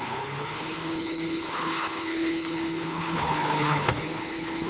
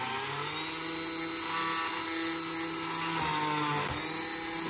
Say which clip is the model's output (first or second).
first